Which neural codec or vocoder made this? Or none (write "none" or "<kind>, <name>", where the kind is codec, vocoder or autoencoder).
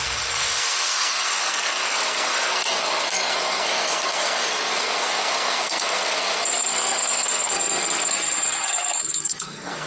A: codec, SNAC